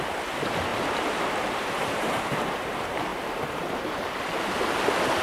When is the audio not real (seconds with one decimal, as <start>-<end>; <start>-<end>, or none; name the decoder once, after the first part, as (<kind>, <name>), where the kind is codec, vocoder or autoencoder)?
0.7-2.4 (vocoder, BigVGAN v2); 3.1-4.2